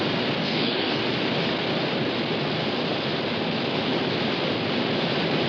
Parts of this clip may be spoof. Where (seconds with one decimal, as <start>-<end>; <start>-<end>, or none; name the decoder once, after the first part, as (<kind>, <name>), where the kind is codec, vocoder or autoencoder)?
0.4-1.0 (codec, DAC)